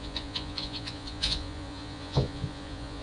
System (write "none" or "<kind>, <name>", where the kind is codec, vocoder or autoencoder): vocoder, Vocos